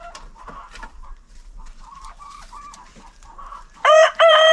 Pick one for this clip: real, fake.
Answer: fake